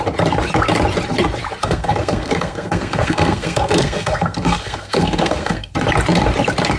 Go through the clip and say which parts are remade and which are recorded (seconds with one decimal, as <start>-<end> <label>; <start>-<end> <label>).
0.0-1.6 recorded; 1.6-5.7 remade; 5.7-6.8 recorded